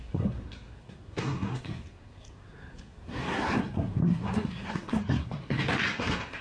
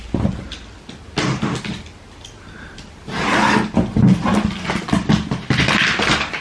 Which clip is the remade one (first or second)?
first